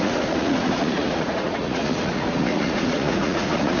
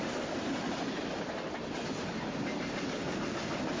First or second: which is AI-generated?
first